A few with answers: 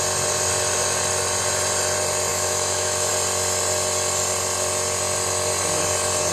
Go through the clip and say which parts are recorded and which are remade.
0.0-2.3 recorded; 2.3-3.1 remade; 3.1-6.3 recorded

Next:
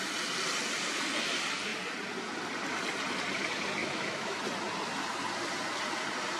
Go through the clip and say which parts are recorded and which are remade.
0.0-3.8 recorded; 3.8-4.4 remade; 4.4-6.4 recorded

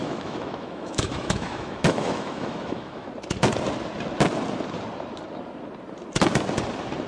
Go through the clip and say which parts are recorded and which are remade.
0.0-3.1 remade; 3.1-7.1 recorded

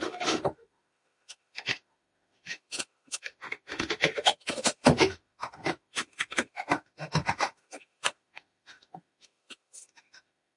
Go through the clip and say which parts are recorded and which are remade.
0.0-10.6 remade